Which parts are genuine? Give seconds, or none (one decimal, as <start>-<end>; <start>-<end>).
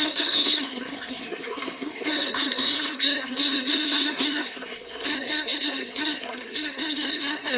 none